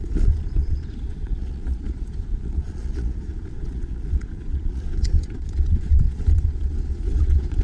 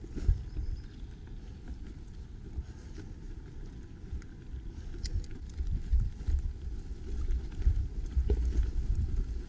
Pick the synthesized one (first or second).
first